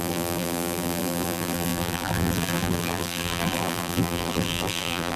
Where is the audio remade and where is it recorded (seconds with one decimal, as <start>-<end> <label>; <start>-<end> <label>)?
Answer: 0.0-5.2 remade